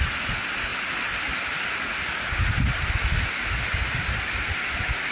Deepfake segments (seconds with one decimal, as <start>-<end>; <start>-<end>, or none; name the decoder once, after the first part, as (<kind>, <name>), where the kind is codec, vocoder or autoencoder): none